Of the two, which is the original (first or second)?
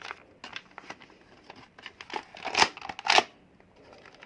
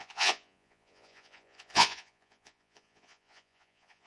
first